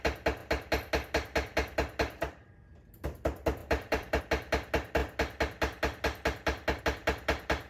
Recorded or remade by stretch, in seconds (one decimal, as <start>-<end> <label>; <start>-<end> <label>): 0.0-3.6 recorded; 3.6-4.2 remade; 4.2-7.7 recorded